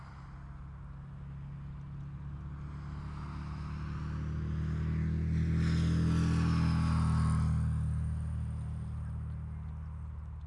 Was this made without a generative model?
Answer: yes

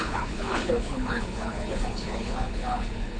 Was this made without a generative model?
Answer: no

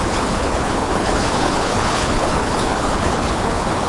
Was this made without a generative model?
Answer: no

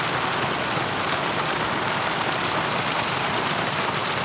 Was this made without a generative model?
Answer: yes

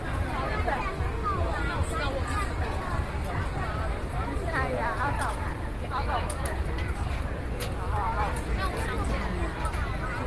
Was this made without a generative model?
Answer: yes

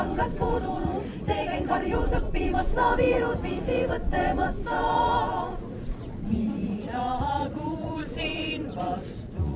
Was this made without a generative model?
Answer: no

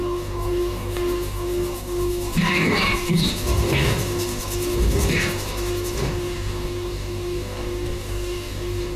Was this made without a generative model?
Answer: no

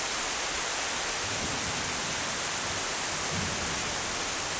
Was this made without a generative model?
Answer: yes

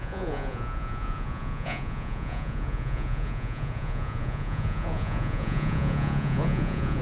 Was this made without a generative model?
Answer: no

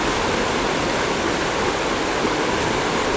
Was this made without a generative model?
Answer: yes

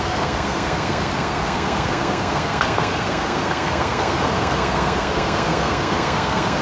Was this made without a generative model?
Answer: no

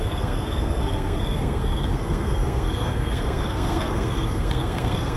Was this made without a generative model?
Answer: no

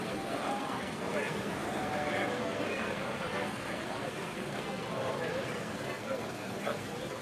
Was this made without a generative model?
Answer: no